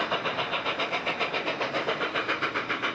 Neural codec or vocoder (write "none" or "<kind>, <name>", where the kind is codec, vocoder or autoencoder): none